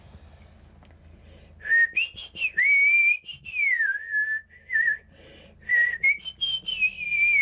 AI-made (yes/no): no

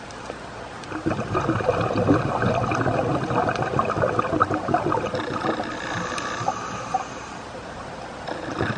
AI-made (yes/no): no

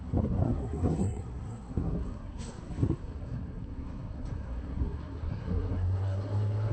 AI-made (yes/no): yes